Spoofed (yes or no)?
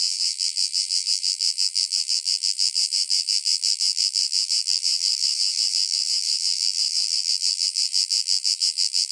yes